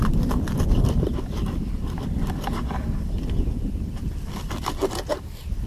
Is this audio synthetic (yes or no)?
yes